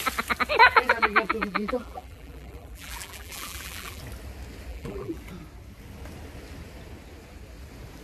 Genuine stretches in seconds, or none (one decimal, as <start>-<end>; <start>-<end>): 0.0-0.6; 4.0-4.7; 5.2-8.0